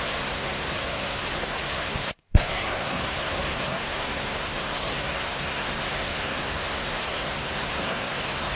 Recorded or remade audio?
remade